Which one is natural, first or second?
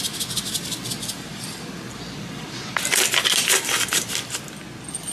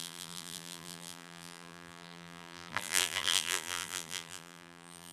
first